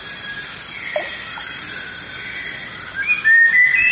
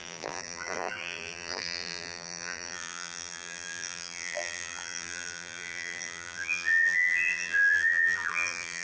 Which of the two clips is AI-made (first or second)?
second